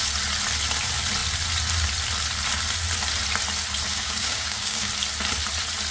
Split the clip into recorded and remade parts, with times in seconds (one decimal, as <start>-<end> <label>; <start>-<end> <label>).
0.0-3.9 recorded; 3.9-4.9 remade; 4.9-5.9 recorded